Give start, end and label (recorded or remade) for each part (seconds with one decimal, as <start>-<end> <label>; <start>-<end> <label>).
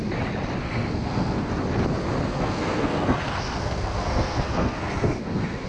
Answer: 0.0-0.6 recorded; 0.6-1.5 remade; 1.5-2.3 recorded; 2.3-5.7 remade